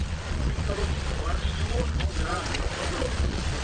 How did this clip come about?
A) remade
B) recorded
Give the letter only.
A